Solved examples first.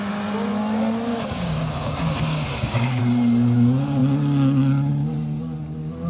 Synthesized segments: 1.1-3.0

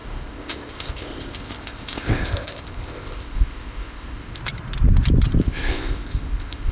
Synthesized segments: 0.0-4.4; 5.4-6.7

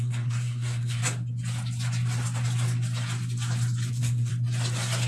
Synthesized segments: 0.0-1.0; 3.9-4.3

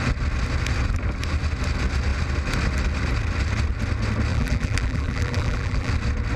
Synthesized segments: 4.3-5.9

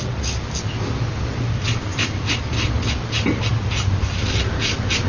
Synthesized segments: none